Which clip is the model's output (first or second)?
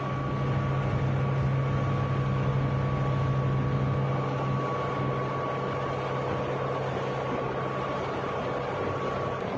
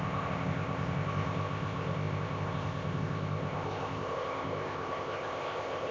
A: second